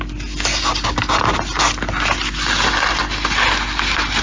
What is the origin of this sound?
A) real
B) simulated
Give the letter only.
A